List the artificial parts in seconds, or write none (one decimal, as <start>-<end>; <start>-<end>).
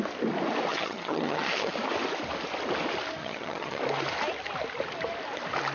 0.7-1.7; 3.2-3.8